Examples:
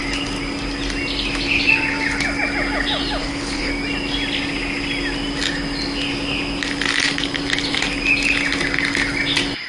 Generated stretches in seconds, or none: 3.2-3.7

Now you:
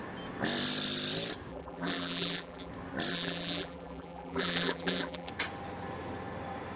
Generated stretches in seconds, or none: 1.5-2.7; 3.1-5.3